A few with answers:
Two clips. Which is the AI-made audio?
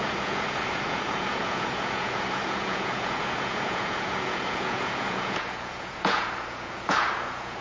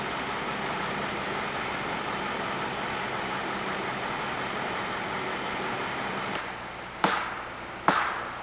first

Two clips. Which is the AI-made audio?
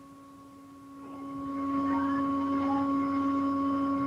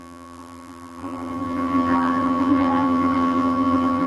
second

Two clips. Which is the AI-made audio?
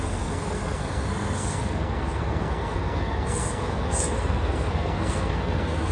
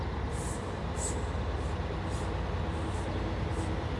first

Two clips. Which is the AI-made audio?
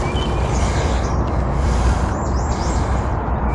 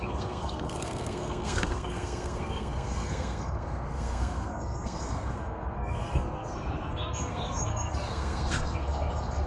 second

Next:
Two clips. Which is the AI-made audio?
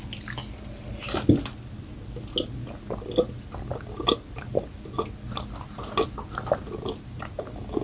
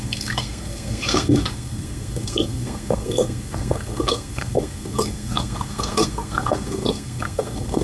second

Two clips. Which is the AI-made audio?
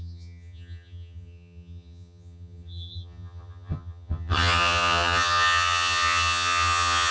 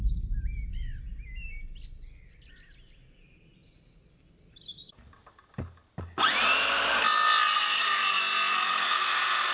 first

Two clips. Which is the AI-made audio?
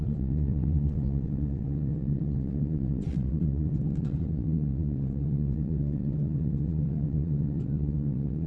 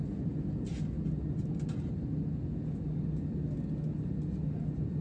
first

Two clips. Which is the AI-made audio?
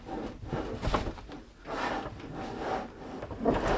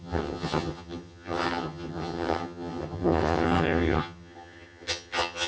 second